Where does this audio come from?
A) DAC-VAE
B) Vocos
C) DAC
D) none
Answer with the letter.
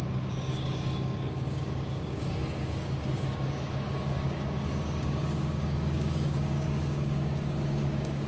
C